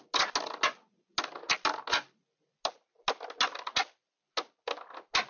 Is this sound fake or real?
real